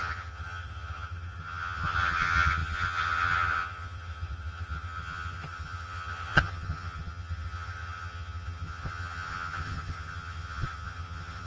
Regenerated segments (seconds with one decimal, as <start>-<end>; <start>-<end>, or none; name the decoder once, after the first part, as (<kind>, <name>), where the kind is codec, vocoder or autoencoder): 0.0-11.5 (vocoder, HiFi-GAN)